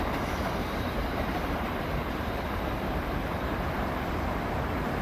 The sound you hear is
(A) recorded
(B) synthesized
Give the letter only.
B